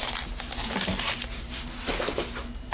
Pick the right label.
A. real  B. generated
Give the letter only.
A